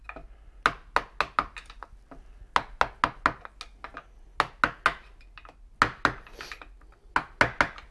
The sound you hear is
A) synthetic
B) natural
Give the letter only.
B